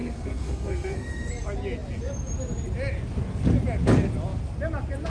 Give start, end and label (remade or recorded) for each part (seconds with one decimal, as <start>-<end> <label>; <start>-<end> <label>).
0.0-1.3 remade; 1.3-5.1 recorded